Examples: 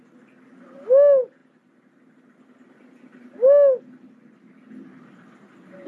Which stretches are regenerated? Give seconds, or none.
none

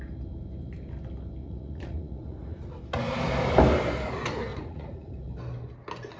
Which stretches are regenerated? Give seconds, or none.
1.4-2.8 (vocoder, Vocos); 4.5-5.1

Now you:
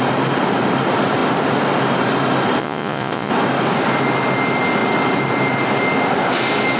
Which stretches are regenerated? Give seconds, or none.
2.6-3.3 (vocoder, Vocos)

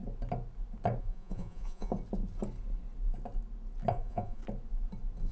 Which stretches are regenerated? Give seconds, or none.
1.0-1.9 (vocoder, Vocos); 3.9-4.4

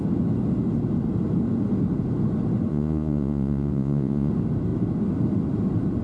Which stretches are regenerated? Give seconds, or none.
2.7-4.3 (vocoder, Vocos)